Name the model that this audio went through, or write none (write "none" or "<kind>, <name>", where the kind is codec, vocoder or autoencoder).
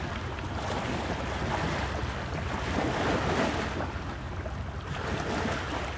none